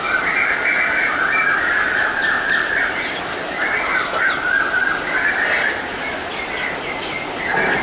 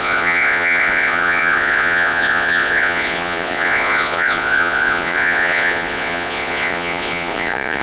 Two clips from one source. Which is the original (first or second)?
first